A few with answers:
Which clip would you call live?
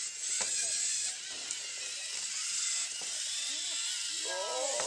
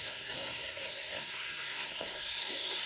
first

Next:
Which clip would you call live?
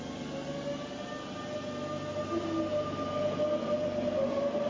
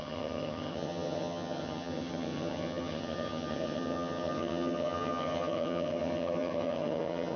first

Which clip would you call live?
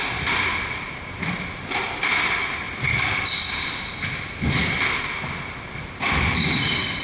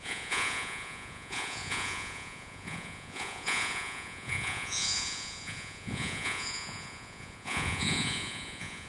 first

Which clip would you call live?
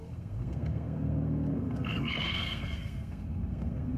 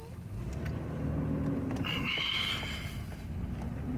second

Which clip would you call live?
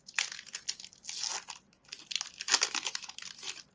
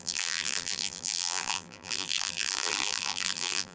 first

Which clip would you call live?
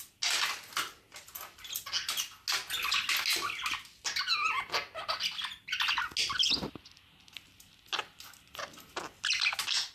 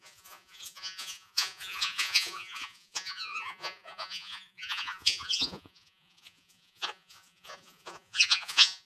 first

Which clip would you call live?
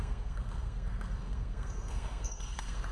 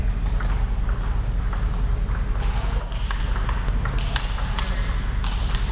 second